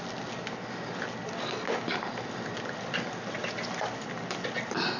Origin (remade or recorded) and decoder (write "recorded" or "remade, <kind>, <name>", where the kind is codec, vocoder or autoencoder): recorded